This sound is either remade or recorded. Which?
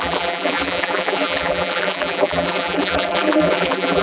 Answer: remade